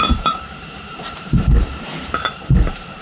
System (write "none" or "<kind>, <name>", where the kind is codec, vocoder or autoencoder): vocoder, BigVGAN v2